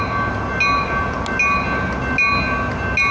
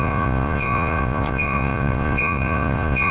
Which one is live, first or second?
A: first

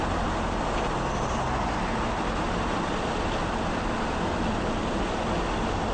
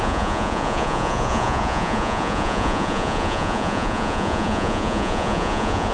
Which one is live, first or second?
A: first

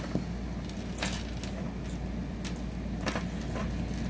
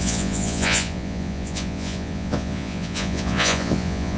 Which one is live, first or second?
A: first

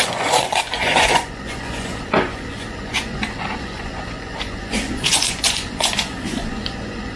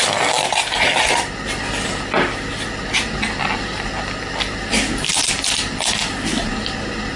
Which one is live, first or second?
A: second